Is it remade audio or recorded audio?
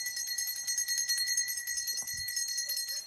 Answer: recorded